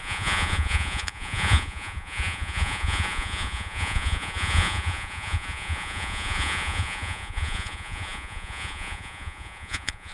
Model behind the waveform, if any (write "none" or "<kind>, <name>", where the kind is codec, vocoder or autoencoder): vocoder, Vocos